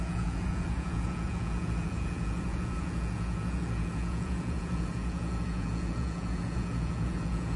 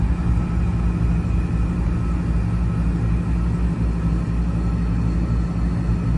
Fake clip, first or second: first